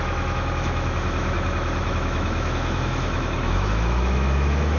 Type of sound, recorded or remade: remade